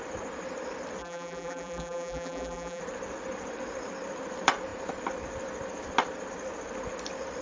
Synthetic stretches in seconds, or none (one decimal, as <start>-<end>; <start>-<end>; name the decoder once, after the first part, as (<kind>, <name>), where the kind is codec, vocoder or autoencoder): 1.0-2.8 (vocoder, BigVGAN v2)